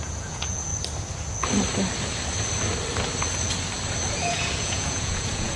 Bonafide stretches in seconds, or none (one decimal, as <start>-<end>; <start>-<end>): 0.7-4.1